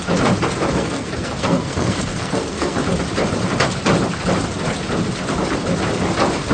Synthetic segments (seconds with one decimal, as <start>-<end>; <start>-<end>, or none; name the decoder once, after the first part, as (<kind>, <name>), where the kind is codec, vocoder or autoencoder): 0.7-2.8 (codec, SNAC)